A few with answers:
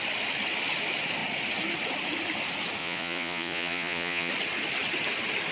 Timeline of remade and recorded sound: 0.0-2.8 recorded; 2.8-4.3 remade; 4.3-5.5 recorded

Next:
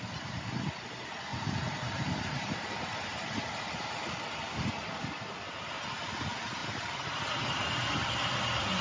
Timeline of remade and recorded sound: 0.0-8.8 recorded

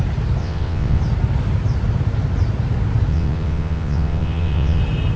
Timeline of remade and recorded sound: 0.0-0.4 recorded; 0.4-1.0 remade; 1.0-3.1 recorded; 3.1-4.8 remade; 4.8-5.2 recorded

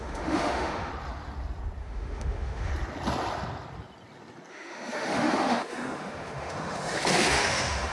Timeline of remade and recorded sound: 0.0-0.9 remade; 0.9-1.8 recorded; 1.8-2.7 remade; 2.7-4.5 recorded; 4.5-7.9 remade